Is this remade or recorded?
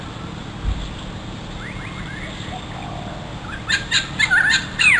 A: recorded